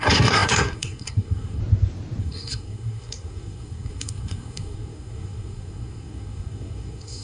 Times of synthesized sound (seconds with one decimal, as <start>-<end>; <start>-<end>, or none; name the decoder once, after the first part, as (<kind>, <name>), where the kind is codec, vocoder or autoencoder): 0.0-1.6 (codec, SNAC); 2.2-7.2